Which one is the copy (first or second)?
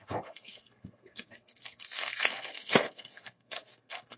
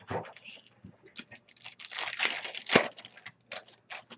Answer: first